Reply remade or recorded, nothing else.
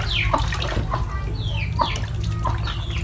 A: recorded